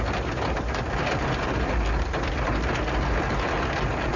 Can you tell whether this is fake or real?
real